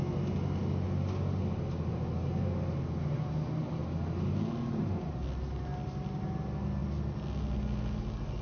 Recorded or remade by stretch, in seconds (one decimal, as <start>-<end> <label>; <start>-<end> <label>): 0.0-8.4 recorded